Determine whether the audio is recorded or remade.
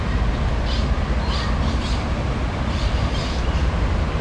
recorded